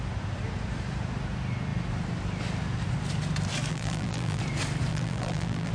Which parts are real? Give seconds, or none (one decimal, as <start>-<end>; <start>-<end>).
0.0-3.7; 4.4-4.9